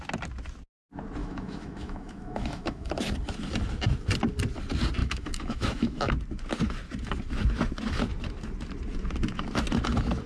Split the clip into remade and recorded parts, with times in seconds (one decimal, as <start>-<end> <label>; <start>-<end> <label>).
0.0-1.2 recorded; 1.2-2.9 remade; 2.9-5.0 recorded; 5.0-6.1 remade; 6.1-10.3 recorded

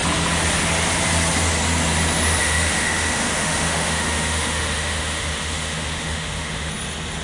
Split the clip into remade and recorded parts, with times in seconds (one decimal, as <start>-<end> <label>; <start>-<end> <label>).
0.0-2.4 recorded; 2.4-6.7 remade; 6.7-7.2 recorded

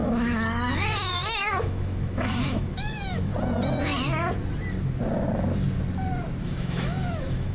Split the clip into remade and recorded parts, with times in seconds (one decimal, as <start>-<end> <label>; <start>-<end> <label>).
0.0-3.3 remade; 3.3-6.4 recorded; 6.4-7.5 remade

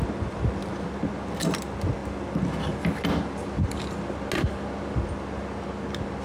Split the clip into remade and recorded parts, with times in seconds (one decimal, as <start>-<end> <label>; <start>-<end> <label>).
0.0-6.2 recorded

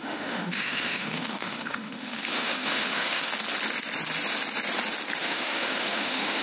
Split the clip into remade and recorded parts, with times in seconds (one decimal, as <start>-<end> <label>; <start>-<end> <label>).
0.0-3.3 remade; 3.3-5.2 recorded; 5.2-6.4 remade

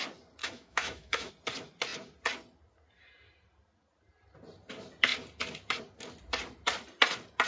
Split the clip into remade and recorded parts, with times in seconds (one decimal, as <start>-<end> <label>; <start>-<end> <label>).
0.0-0.4 recorded; 0.4-1.3 remade; 1.3-7.5 recorded

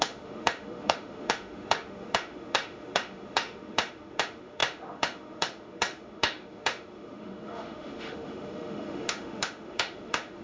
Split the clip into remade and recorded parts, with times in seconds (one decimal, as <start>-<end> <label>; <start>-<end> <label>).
0.0-10.4 remade

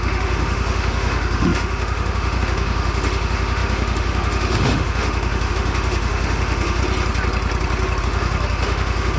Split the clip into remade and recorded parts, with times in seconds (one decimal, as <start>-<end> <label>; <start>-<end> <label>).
0.0-6.8 remade; 6.8-8.0 recorded; 8.0-9.2 remade